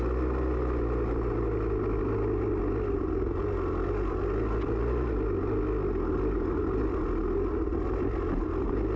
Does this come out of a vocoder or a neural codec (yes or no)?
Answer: no